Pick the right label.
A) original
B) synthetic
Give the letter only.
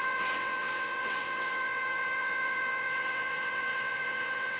B